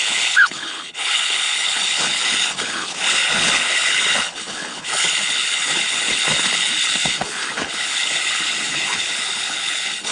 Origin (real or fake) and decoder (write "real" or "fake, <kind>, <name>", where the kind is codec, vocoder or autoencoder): fake, codec, HILCodec